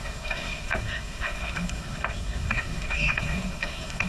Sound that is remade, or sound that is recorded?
remade